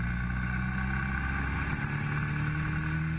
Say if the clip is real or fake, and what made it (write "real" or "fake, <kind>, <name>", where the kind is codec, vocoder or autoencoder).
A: real